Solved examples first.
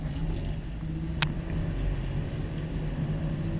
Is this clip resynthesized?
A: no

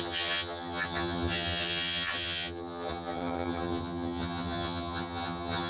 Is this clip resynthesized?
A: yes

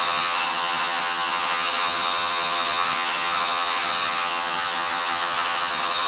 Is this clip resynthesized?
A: yes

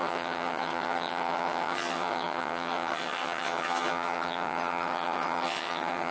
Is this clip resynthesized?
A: yes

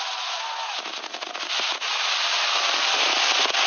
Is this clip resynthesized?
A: no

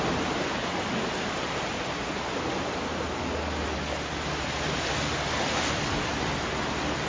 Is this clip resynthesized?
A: no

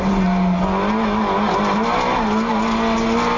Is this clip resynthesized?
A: no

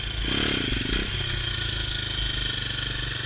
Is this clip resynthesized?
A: no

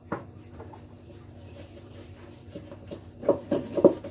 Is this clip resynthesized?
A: no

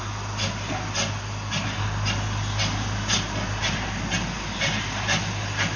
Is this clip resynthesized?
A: no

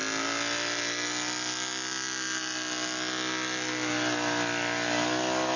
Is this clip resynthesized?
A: no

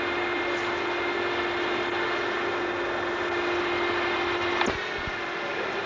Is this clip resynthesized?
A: no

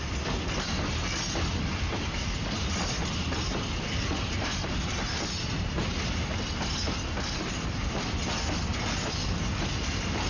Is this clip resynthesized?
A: no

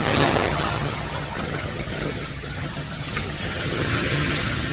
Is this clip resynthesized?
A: yes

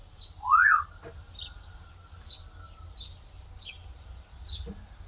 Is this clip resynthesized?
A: no